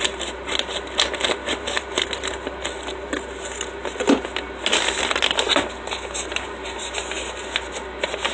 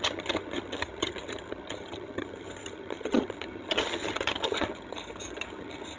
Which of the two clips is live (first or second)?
first